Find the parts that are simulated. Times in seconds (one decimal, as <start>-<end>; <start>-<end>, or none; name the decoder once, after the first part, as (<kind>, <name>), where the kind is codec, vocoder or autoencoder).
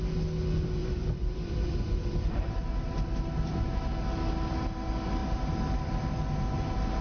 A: 0.8-3.9 (vocoder, BigVGAN v2)